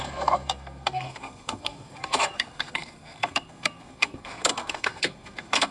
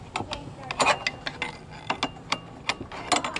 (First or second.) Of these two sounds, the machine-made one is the first